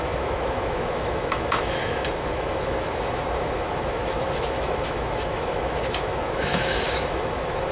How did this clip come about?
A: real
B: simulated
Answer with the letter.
B